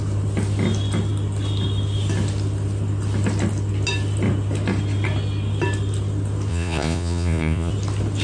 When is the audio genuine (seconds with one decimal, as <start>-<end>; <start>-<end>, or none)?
0.0-6.5; 7.7-8.2

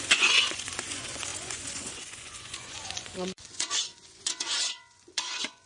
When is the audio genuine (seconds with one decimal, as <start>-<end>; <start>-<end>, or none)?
none

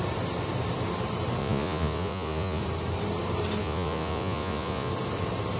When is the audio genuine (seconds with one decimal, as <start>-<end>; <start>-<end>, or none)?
0.0-1.4; 2.6-3.6; 4.9-5.6

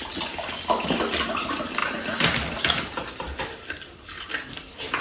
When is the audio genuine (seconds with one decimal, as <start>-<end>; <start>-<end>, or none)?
0.0-5.0